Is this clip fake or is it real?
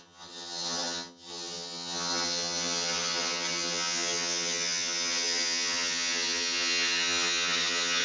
fake